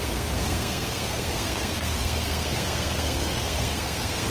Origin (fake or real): fake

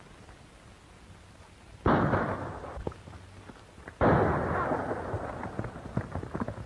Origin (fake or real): real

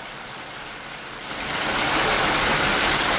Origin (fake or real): real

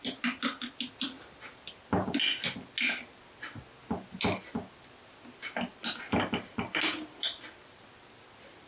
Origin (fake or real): real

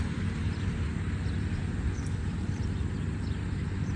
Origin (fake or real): real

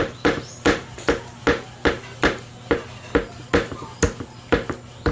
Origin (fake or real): real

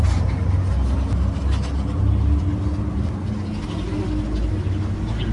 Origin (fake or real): real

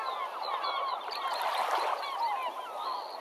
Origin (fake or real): real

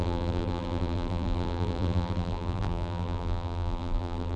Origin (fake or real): fake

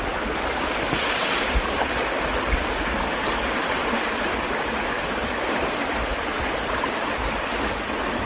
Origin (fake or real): real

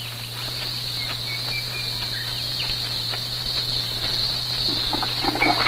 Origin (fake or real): real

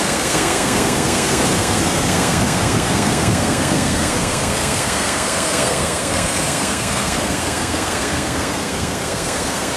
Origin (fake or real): fake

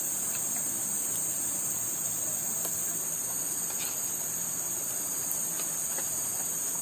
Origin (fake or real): real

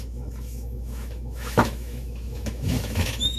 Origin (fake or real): fake